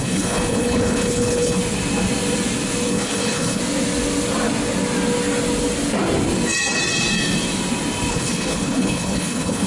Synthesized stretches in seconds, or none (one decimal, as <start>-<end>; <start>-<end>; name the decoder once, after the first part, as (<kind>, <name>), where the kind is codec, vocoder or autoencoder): 0.0-1.6 (codec, HILCodec); 2.9-3.6; 8.1-9.7